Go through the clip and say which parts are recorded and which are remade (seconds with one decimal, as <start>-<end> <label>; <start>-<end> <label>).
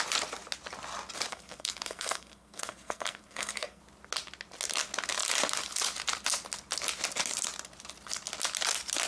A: 0.0-1.3 recorded; 1.3-3.8 remade; 3.8-9.1 recorded